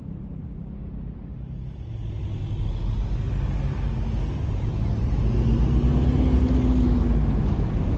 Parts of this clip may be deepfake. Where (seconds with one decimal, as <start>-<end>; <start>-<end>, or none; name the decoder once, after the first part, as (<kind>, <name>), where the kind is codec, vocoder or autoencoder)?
none